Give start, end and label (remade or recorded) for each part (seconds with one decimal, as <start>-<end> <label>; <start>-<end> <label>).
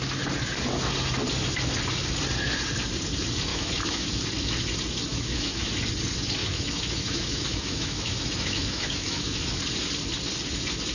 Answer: 0.0-3.5 recorded; 3.5-4.2 remade; 4.2-5.1 recorded; 5.1-5.7 remade; 5.7-6.4 recorded; 6.4-9.6 remade; 9.6-10.9 recorded